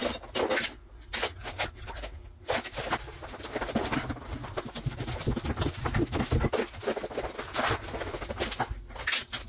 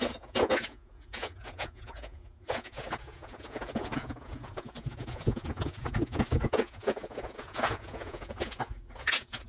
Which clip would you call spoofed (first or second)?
second